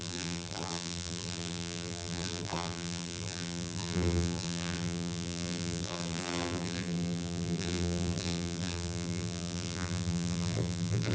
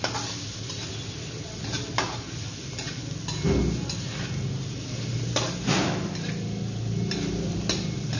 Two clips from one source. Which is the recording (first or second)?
second